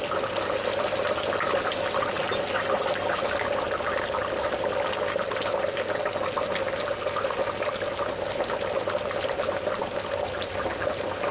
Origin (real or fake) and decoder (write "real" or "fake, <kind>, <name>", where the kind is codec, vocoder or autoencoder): real